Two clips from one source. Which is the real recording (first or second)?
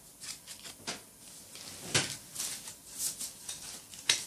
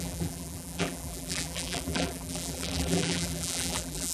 first